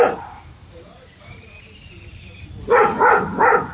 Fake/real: fake